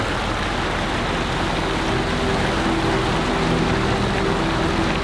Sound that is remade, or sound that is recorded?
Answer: recorded